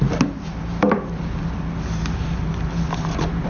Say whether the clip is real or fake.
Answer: real